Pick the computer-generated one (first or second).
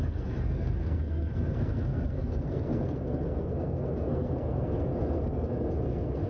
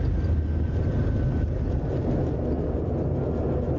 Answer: first